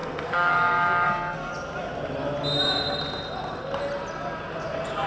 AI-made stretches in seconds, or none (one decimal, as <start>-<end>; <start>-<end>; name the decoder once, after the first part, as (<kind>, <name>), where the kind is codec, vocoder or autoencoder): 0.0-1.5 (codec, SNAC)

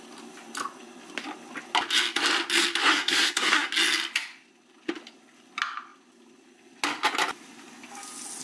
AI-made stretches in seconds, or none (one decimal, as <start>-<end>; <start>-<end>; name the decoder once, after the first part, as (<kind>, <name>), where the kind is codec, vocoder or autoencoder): 2.8-3.7 (codec, SNAC)

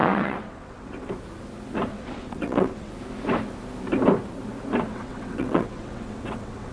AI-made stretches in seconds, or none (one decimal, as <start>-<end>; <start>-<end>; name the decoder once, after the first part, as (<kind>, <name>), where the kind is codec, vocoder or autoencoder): 0.0-1.1 (vocoder, WaveNeXt); 1.9-2.9; 4.9-6.7

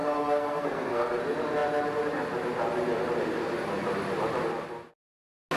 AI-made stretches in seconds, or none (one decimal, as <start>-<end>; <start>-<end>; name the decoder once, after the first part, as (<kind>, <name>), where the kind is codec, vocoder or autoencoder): 0.0-1.2 (codec, SNAC)